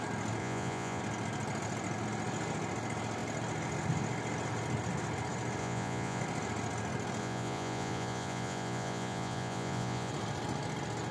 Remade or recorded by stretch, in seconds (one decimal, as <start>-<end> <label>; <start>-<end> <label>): 0.0-0.4 recorded; 0.4-1.0 remade; 1.0-5.6 recorded; 5.6-6.2 remade; 6.2-7.2 recorded; 7.2-10.1 remade; 10.1-11.1 recorded